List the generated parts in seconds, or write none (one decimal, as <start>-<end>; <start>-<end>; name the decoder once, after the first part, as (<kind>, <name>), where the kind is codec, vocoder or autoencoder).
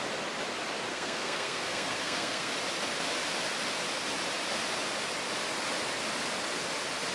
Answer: 0.9-2.5 (codec, SNAC)